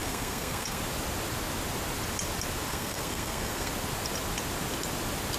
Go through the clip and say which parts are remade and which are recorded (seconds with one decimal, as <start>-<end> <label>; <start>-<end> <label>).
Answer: 0.0-0.8 remade; 0.8-2.7 recorded; 2.7-3.7 remade; 3.7-5.4 recorded